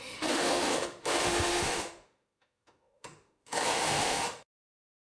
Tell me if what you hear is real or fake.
fake